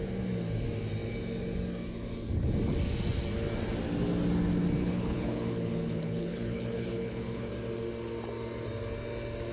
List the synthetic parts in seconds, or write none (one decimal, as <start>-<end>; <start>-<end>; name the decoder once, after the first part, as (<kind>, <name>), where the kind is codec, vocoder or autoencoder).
4.8-7.5 (codec, HILCodec)